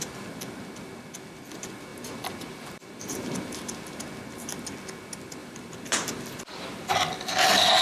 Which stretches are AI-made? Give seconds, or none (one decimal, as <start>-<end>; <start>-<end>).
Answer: 1.9-4.0; 5.4-6.9